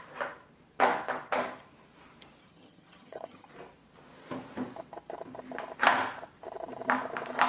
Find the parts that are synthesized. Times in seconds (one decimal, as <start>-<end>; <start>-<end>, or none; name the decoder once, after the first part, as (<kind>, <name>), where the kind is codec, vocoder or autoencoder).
2.4-3.5 (vocoder, HiFi-GAN)

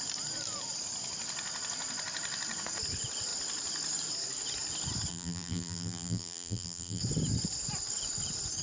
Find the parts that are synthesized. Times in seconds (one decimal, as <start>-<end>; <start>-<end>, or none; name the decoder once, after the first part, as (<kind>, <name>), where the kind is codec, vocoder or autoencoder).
5.1-7.0 (vocoder, BigVGAN v2)

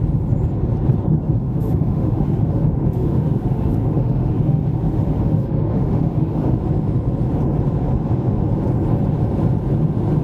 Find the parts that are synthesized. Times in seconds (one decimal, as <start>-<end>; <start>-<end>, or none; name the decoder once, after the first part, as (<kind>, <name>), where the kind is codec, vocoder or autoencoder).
1.4-6.6 (autoencoder, DAC-VAE)

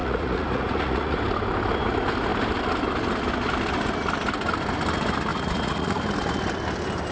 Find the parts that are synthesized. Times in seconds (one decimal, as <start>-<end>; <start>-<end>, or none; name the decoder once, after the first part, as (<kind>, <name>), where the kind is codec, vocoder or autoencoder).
0.0-1.2 (vocoder, Vocos); 5.3-6.0

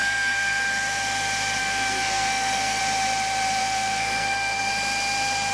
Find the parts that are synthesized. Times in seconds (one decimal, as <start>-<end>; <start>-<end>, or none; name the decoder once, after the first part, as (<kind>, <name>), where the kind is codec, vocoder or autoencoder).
0.0-0.6 (codec, SNAC); 1.6-2.8; 3.6-4.7

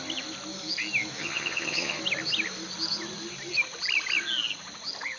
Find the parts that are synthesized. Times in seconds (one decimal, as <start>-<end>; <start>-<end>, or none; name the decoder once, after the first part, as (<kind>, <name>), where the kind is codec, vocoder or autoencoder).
1.2-2.0 (vocoder, HiFi-GAN)